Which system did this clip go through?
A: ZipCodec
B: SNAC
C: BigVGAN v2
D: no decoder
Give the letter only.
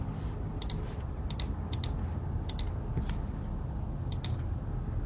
D